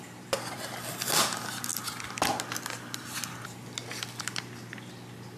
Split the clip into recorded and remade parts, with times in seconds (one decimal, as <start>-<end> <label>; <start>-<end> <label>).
0.0-5.4 recorded